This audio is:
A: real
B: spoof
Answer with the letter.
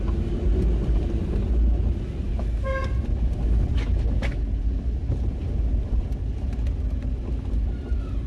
A